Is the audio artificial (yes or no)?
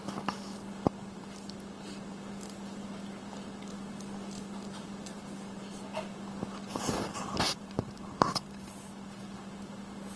no